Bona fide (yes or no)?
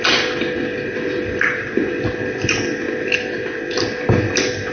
yes